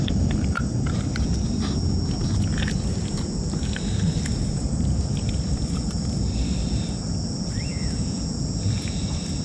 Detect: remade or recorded recorded